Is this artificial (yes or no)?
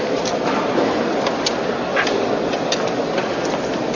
no